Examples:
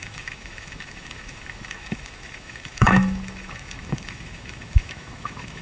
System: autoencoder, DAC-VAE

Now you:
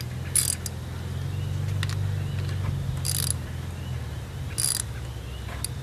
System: none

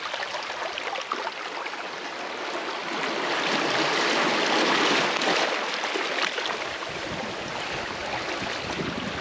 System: none